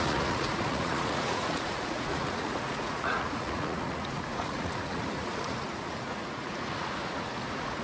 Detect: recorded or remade remade